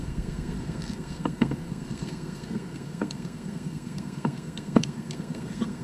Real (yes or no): no